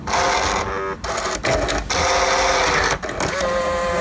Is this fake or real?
real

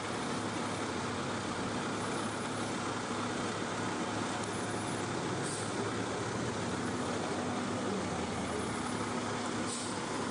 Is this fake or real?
real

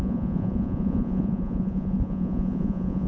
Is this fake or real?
fake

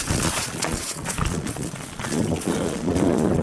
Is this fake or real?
fake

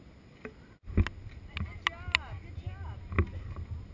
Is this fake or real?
real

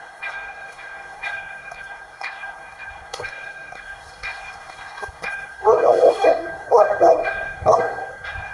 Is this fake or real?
fake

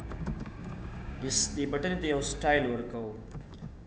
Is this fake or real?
fake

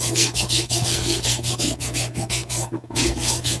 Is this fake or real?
fake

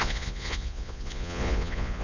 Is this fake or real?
fake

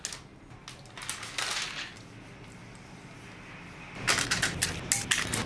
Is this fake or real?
real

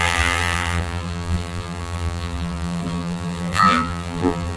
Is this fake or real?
fake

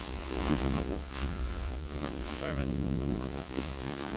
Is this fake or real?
fake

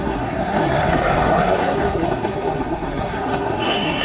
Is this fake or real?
fake